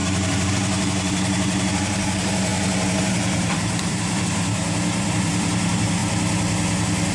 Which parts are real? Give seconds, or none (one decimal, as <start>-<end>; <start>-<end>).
2.5-3.0; 6.0-7.1